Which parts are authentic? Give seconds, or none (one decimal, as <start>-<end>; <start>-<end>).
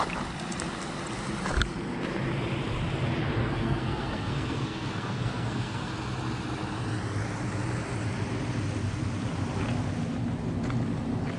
0.0-3.4; 5.9-11.4